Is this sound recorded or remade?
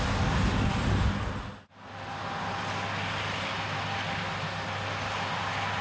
recorded